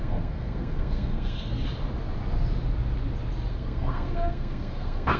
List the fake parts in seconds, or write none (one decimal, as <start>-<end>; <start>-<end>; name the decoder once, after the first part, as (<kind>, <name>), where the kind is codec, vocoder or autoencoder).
0.0-1.5 (codec, SNAC); 3.5-5.2